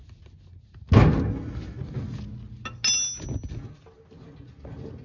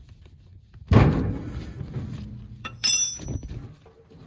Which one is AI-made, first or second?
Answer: second